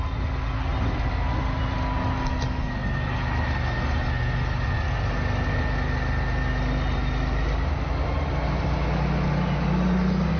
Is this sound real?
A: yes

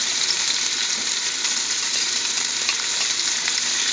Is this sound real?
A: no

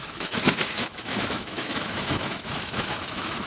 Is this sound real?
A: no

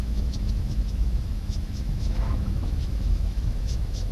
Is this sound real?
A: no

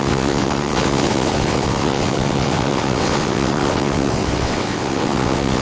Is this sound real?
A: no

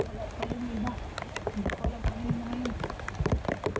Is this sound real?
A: yes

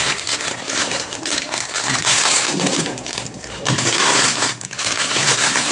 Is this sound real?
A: no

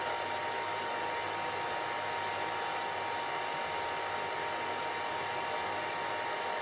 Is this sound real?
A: yes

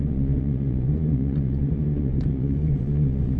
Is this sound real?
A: no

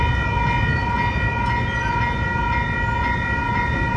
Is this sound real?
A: yes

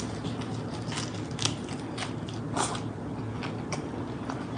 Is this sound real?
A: yes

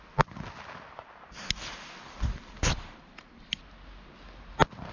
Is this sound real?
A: yes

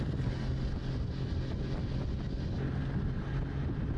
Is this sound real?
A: yes